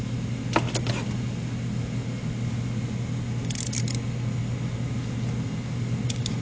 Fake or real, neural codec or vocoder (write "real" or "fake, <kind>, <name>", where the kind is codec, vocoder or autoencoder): real